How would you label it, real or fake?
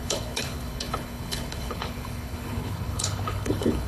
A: fake